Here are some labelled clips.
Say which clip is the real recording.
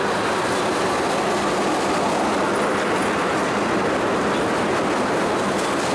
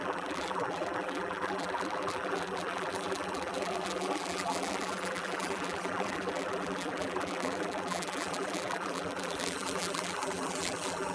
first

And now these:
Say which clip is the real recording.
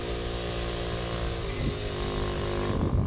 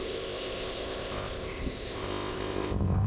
first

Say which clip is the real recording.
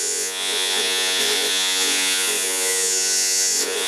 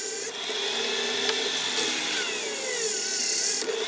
second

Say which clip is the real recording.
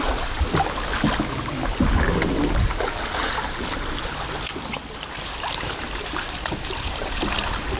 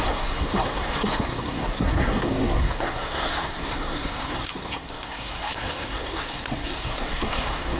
first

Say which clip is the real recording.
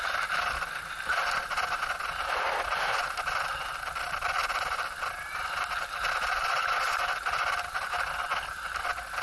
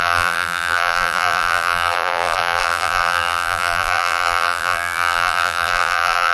first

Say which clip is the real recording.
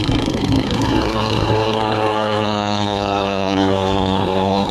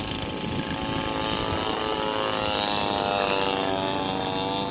second